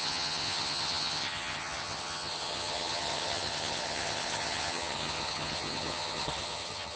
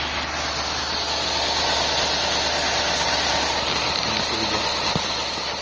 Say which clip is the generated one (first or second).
first